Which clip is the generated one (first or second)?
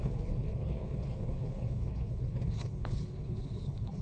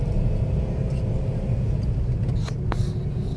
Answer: first